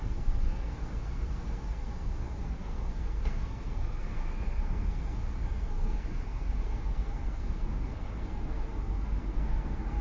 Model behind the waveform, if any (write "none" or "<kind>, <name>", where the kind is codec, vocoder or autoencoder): codec, SNAC